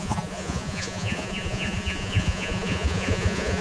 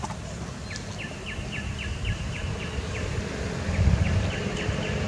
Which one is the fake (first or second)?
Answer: first